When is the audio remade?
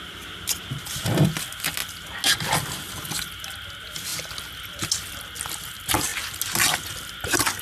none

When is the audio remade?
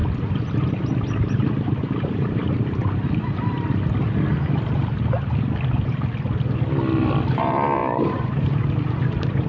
0.7-2.4 (vocoder, BigVGAN v2); 7.3-9.5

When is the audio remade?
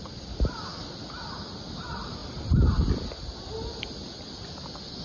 none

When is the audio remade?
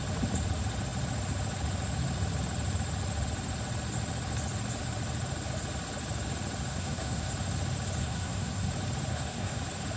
6.7-7.3 (codec, SNAC); 8.0-8.7; 9.1-9.6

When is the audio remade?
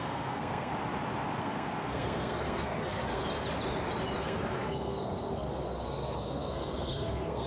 0.0-0.7 (codec, SNAC); 1.4-3.2; 4.2-7.5